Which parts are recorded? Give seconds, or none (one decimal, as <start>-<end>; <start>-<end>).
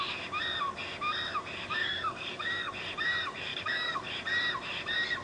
0.0-1.8; 2.7-3.5; 4.1-5.2